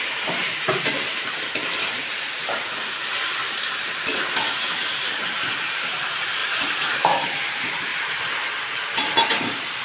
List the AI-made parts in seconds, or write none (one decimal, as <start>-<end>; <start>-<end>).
0.0-7.9; 9.0-9.8